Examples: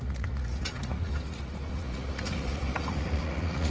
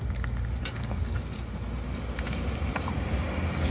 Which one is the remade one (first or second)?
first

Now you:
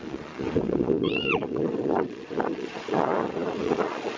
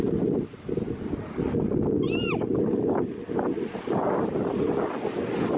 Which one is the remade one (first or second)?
first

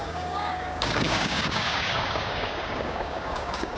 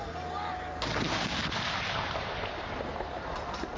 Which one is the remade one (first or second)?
first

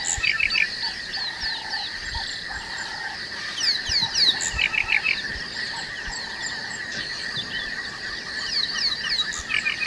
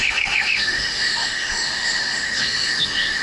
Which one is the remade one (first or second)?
second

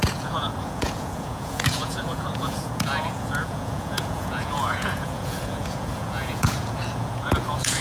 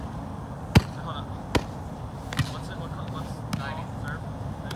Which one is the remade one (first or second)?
first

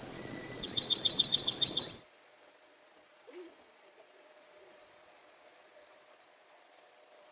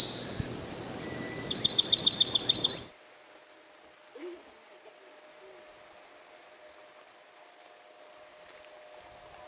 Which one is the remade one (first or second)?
first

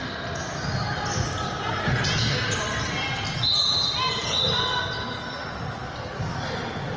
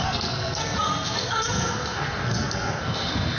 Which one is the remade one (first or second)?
second